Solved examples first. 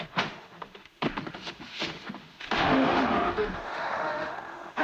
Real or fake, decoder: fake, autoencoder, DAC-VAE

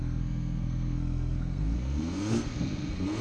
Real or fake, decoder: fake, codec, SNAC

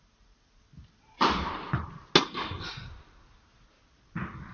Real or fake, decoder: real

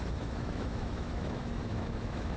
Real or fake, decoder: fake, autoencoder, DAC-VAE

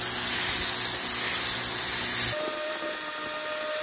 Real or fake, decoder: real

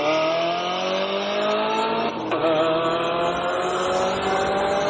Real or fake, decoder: real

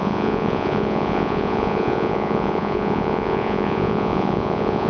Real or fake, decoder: fake, vocoder, Vocos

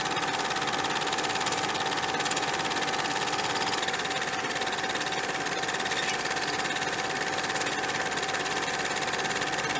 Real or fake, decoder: real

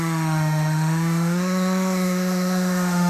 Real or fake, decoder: fake, autoencoder, DAC-VAE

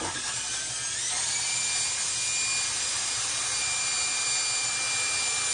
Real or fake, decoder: real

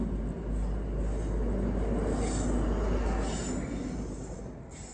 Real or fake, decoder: real